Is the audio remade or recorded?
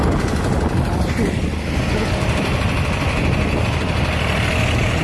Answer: recorded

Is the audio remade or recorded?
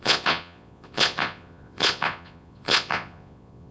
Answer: remade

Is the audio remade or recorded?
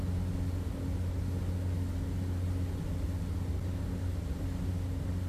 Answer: recorded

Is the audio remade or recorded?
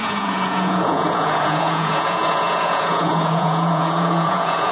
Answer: remade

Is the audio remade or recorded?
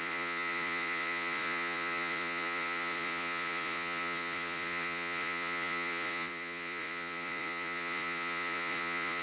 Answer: remade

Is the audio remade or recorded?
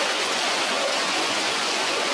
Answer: remade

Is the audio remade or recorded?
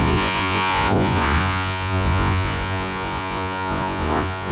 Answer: remade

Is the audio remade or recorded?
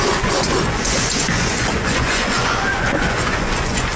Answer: remade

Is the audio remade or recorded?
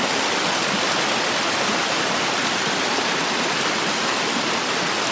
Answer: recorded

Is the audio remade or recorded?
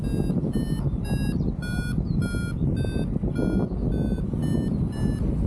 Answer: recorded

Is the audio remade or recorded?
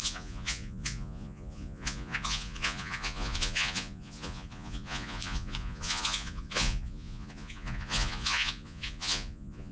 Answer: remade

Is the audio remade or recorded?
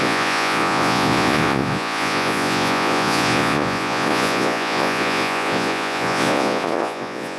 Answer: remade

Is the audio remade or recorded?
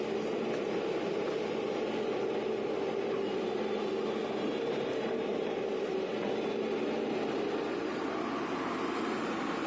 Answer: recorded